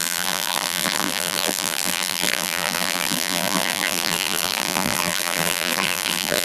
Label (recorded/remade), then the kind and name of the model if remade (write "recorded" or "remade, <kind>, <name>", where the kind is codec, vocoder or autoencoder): remade, vocoder, BigVGAN v2